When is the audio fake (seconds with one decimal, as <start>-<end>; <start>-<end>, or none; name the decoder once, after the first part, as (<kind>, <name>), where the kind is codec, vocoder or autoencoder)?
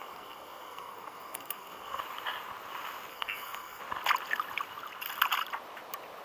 0.0-2.0 (codec, SNAC); 3.1-3.8